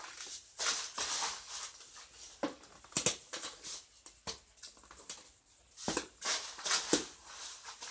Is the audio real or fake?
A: real